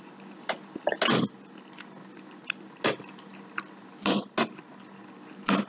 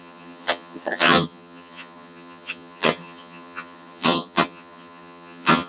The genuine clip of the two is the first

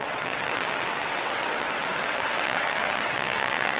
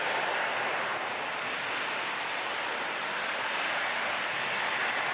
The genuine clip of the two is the second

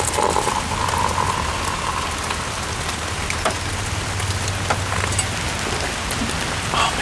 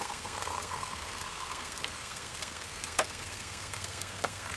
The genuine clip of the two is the first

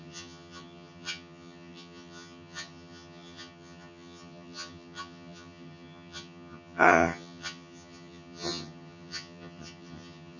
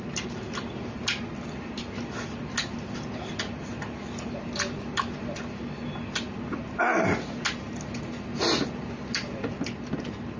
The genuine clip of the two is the second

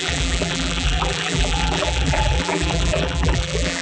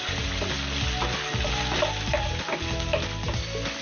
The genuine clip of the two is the second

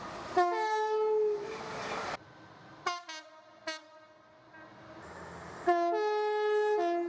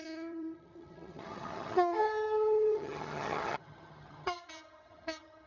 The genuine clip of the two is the first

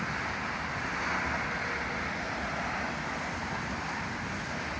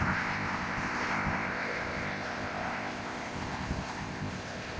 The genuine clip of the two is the first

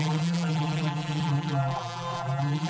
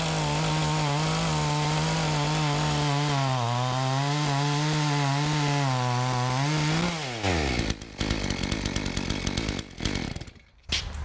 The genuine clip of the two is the second